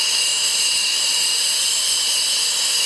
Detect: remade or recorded recorded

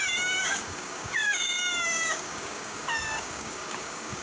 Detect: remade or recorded remade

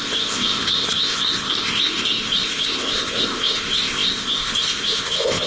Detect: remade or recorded remade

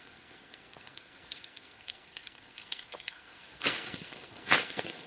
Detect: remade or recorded remade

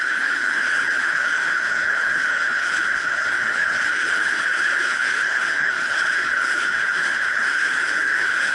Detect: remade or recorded remade